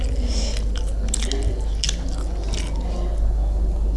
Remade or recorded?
recorded